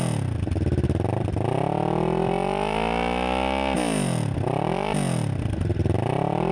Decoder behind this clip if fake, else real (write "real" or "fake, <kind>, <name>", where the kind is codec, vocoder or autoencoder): real